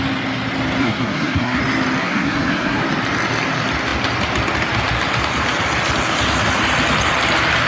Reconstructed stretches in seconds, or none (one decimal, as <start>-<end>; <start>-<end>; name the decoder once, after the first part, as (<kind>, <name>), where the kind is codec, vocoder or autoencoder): 0.8-1.6 (codec, SNAC); 2.0-2.8

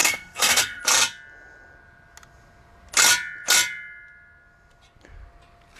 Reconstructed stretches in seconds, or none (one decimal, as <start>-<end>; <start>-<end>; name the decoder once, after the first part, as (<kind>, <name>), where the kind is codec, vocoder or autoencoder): 0.0-0.8 (codec, SNAC)

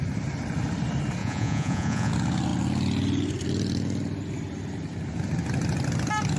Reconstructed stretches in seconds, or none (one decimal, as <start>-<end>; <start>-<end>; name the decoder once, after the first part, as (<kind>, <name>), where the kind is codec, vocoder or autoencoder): 1.2-2.1 (vocoder, Vocos)

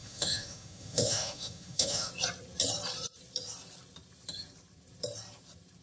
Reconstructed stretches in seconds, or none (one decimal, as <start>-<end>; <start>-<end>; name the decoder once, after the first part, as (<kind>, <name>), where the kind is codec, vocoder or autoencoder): 0.0-2.1 (autoencoder, DAC-VAE)

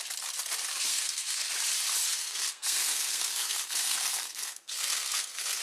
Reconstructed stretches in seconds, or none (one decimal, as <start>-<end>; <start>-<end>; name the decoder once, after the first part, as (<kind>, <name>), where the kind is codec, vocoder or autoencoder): 0.9-1.5 (codec, SNAC); 2.1-5.6

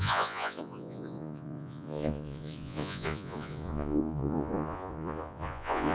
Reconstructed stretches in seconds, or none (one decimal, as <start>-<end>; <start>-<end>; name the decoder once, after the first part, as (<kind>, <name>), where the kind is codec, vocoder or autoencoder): 0.0-5.9 (vocoder, Vocos)